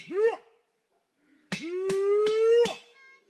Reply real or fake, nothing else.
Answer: fake